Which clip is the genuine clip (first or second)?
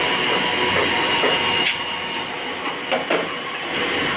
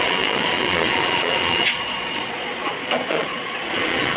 first